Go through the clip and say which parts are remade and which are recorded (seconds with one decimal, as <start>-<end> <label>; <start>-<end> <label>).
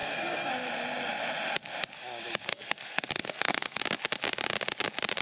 0.0-0.5 remade; 0.5-2.5 recorded; 2.5-3.8 remade; 3.8-5.2 recorded